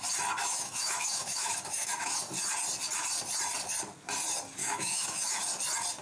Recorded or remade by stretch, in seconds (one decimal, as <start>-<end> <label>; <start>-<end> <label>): 0.0-0.4 recorded; 0.4-2.2 remade; 2.2-4.6 recorded; 4.6-5.4 remade; 5.4-6.0 recorded